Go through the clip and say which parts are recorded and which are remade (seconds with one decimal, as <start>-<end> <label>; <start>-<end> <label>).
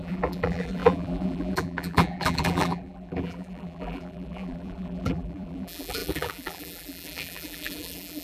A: 0.0-8.2 remade